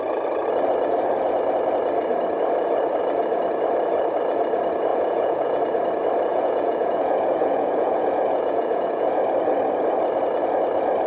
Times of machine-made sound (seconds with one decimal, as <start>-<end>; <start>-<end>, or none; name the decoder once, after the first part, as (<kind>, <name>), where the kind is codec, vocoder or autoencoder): 4.9-5.6 (vocoder, Vocos); 6.3-9.2